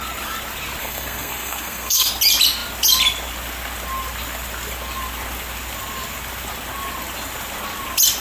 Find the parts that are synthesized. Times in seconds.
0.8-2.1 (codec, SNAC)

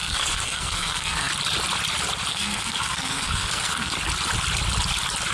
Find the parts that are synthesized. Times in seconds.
0.0-1.3 (codec, SNAC); 2.3-3.9

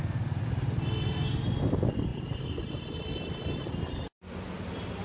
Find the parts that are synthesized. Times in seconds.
none